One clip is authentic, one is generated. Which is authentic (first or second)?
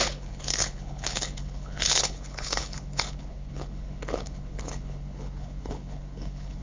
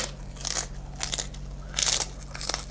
second